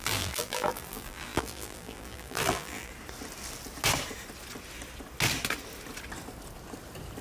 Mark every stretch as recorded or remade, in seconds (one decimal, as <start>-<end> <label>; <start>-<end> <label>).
0.0-2.9 remade; 2.9-7.2 recorded